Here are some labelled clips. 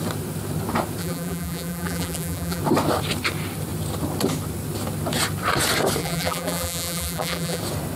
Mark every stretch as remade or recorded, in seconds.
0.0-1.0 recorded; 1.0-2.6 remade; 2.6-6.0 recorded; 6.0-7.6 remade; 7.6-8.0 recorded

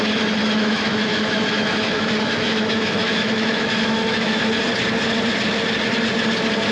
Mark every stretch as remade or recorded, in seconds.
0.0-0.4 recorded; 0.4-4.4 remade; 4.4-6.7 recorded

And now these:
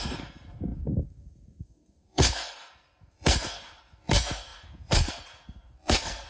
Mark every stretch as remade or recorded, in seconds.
0.0-6.3 remade

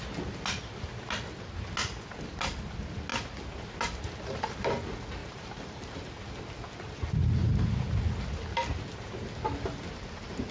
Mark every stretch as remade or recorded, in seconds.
0.0-5.2 recorded; 5.2-6.2 remade; 6.2-10.5 recorded

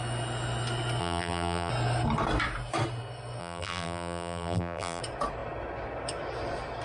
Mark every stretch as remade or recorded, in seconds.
0.0-1.0 recorded; 1.0-1.7 remade; 1.7-3.4 recorded; 3.4-5.0 remade; 5.0-6.8 recorded

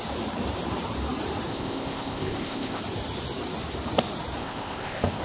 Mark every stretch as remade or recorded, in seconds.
0.0-1.5 recorded; 1.5-2.8 remade; 2.8-4.4 recorded; 4.4-5.2 remade